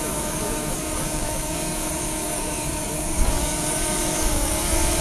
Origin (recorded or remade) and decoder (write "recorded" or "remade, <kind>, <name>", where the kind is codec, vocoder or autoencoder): remade, codec, DAC